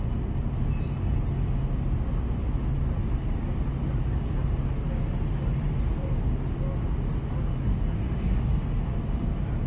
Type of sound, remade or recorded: recorded